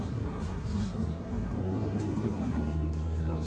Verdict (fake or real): fake